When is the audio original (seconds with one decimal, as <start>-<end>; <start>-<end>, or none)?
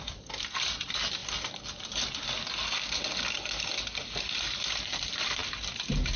0.0-6.2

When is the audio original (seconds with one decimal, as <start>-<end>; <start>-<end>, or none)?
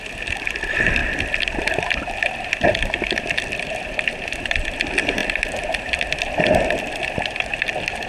2.7-4.6; 5.2-6.4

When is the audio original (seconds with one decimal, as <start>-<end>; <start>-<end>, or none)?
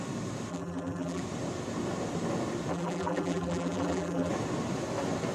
0.0-0.5; 1.2-2.7; 4.3-5.3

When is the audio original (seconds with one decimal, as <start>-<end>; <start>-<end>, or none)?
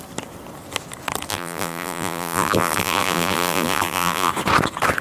0.0-1.3; 4.3-5.0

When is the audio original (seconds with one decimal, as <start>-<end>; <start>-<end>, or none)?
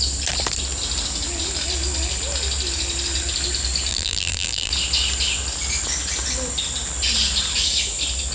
0.0-3.9; 4.7-8.3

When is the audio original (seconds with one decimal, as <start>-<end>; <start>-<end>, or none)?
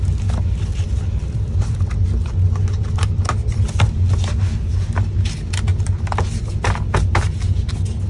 0.0-0.7; 1.8-3.4; 4.3-8.1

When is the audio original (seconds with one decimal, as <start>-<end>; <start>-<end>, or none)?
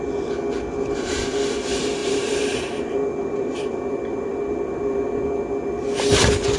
0.0-2.0; 3.7-6.6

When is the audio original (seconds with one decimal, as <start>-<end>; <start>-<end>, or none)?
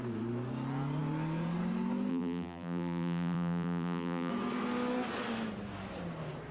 0.0-2.1; 4.3-6.5